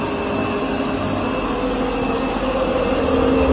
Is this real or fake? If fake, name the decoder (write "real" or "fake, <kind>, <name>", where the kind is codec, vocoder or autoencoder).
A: real